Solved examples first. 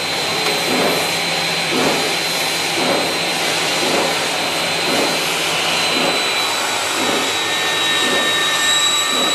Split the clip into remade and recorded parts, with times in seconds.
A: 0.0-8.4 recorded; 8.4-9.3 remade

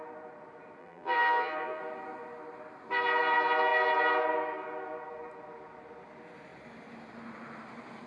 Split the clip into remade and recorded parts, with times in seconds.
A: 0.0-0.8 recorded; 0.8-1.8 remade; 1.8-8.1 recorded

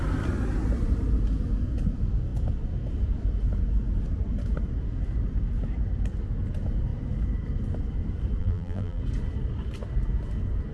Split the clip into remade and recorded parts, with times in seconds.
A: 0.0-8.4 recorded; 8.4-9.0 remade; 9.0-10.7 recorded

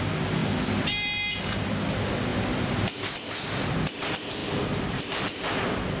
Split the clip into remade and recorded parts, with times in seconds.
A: 0.0-6.0 remade

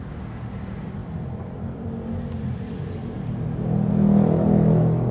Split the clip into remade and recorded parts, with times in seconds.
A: 0.0-1.0 recorded; 1.0-1.9 remade; 1.9-5.1 recorded

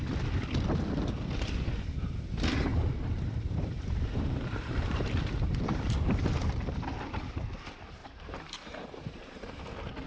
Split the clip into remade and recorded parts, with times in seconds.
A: 0.0-2.7 recorded; 2.7-6.2 remade; 6.2-8.0 recorded; 8.0-9.6 remade; 9.6-10.1 recorded

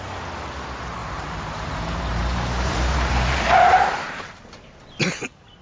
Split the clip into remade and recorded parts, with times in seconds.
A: 0.0-1.0 recorded; 1.0-4.4 remade; 4.4-5.6 recorded

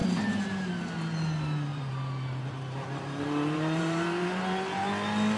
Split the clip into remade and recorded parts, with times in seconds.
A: 0.0-0.7 remade; 0.7-1.7 recorded; 1.7-4.9 remade; 4.9-5.4 recorded